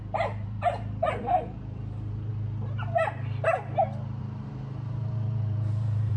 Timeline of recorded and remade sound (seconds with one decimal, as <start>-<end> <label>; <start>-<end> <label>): 0.0-2.3 remade; 2.3-4.2 recorded; 4.2-6.2 remade